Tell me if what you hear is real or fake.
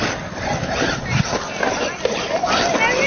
real